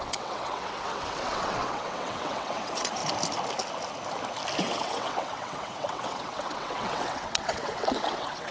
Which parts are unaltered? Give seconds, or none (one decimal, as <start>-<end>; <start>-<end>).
3.0-4.6